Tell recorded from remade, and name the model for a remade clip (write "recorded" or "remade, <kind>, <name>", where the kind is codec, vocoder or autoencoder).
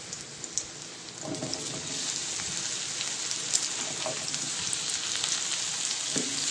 recorded